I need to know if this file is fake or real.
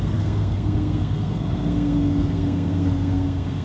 fake